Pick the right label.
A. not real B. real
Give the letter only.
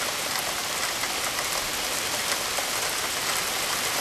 B